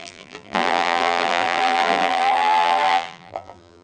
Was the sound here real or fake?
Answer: fake